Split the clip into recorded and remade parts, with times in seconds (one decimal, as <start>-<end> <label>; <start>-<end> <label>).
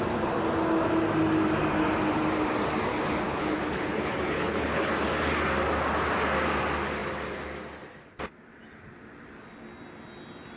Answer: 0.0-2.9 recorded; 2.9-4.9 remade; 4.9-10.6 recorded